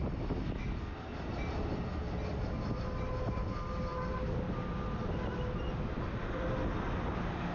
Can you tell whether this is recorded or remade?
recorded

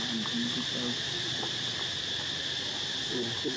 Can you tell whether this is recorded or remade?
recorded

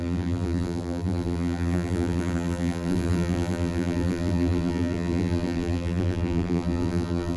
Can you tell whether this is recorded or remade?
remade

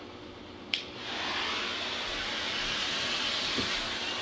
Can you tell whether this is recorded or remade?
recorded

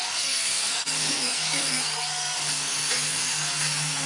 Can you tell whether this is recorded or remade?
remade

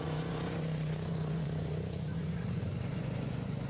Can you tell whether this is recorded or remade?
remade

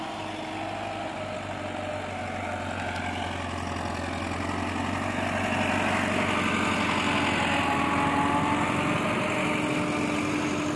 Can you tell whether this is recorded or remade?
recorded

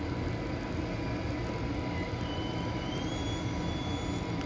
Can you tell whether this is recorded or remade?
recorded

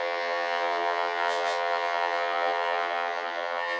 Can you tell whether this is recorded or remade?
remade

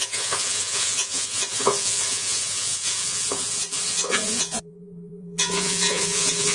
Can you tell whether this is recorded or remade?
remade